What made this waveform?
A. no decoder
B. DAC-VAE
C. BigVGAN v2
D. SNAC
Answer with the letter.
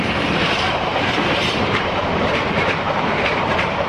C